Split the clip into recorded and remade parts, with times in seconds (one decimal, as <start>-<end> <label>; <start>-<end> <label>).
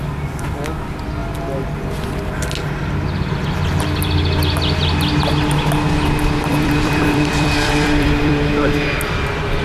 0.0-6.5 recorded; 6.5-8.3 remade; 8.3-9.6 recorded